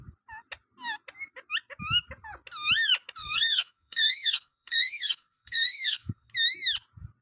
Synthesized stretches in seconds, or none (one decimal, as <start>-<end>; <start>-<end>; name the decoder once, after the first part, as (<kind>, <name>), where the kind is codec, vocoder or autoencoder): 3.2-6.3 (codec, SNAC)

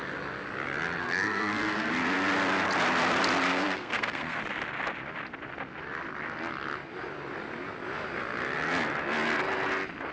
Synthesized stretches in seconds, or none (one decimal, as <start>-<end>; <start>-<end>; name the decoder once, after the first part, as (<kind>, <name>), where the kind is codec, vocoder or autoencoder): 1.0-1.9 (codec, SNAC); 3.5-4.4

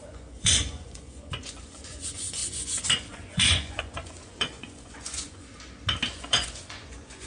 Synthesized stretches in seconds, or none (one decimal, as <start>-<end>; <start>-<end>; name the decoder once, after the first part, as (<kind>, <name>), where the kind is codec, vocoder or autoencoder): 0.0-5.5 (vocoder, Vocos); 6.1-7.3

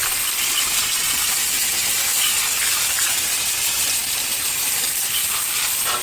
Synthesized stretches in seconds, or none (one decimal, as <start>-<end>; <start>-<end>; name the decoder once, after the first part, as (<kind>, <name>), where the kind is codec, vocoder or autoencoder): none